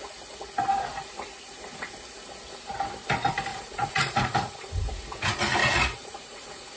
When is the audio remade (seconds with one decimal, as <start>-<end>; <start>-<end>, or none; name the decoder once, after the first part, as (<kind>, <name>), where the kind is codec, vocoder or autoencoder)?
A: 3.5-4.7 (vocoder, Vocos); 5.6-6.8